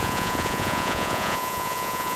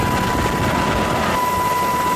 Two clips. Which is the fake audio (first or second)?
first